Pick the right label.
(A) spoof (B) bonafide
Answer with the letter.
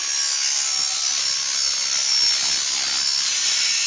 B